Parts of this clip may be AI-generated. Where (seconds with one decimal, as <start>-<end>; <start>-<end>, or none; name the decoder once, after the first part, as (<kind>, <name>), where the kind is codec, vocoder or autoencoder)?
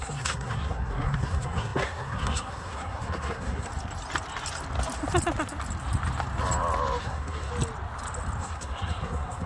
0.0-3.7 (codec, SNAC); 7.0-7.5; 8.4-9.5